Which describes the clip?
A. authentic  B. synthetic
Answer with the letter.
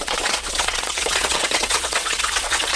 B